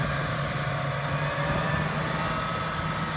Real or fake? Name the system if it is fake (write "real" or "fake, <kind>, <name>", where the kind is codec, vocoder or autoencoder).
real